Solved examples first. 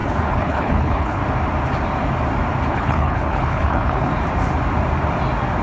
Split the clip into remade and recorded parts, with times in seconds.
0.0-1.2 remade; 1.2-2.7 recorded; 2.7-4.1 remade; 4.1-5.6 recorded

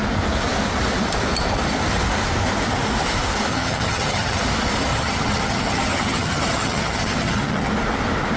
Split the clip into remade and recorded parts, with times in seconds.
0.0-3.5 recorded; 3.5-4.4 remade; 4.4-4.9 recorded; 4.9-7.7 remade; 7.7-8.4 recorded

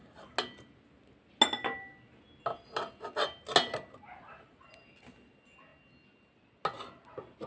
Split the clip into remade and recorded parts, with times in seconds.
0.0-7.5 recorded

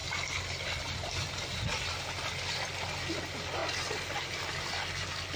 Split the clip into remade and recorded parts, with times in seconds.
0.0-5.4 recorded

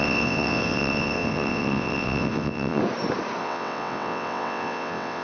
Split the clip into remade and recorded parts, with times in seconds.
0.0-2.8 remade; 2.8-3.4 recorded; 3.4-5.2 remade